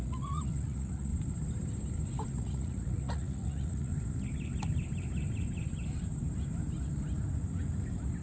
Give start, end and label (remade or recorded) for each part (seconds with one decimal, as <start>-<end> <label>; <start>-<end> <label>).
0.0-1.1 remade; 1.1-2.3 recorded; 2.3-3.9 remade; 3.9-8.2 recorded